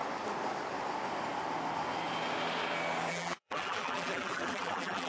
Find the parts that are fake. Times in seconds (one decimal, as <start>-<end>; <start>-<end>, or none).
3.1-5.1